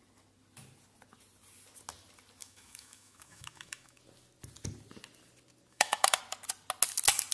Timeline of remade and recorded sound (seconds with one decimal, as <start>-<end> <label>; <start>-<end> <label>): 0.0-2.4 recorded; 2.4-4.0 remade; 4.0-5.7 recorded; 5.7-6.2 remade; 6.2-7.3 recorded